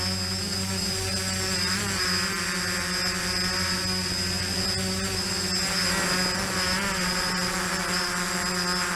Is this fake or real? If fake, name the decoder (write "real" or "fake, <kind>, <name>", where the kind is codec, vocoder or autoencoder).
real